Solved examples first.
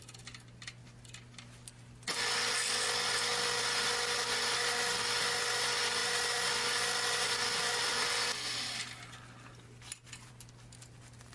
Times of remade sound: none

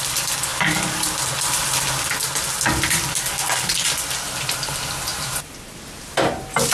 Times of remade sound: none

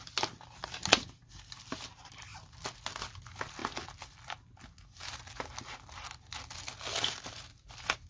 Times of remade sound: none

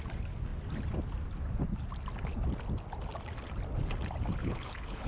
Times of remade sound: 4.4-5.1 (codec, HILCodec)

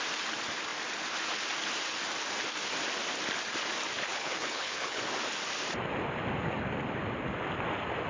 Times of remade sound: 4.1-5.0 (codec, HILCodec)

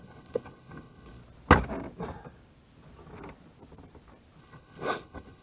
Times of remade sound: 0.0-1.2 (codec, HILCodec); 4.4-5.4

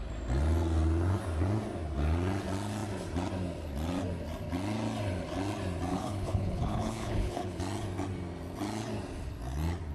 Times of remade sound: 5.9-7.6 (codec, HILCodec)